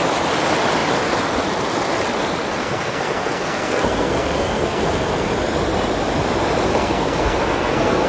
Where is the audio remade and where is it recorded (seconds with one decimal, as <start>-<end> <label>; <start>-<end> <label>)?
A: 0.0-2.6 recorded; 2.6-5.3 remade; 5.3-6.7 recorded; 6.7-8.1 remade